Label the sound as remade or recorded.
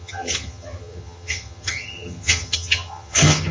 remade